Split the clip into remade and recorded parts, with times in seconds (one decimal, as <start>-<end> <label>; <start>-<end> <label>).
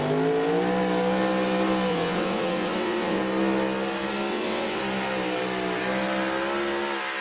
0.0-1.9 recorded; 1.9-3.2 remade; 3.2-4.3 recorded; 4.3-4.8 remade; 4.8-7.2 recorded